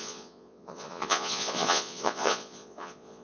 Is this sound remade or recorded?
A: remade